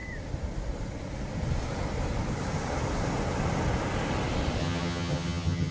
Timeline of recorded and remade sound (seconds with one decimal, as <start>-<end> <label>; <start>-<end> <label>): 0.0-4.6 recorded; 4.6-5.7 remade